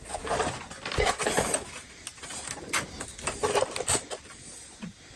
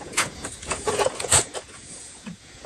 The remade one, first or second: second